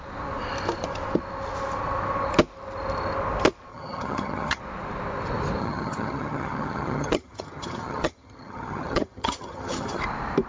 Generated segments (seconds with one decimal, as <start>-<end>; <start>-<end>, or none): 3.7-4.6; 5.6-10.0